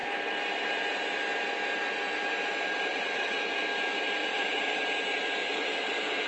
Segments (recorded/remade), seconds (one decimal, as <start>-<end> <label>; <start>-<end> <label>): 0.0-2.9 recorded; 2.9-3.4 remade; 3.4-4.2 recorded; 4.2-4.8 remade; 4.8-5.4 recorded; 5.4-6.3 remade